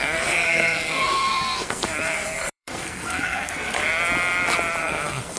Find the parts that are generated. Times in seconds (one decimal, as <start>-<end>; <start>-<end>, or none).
0.0-3.8; 4.8-5.4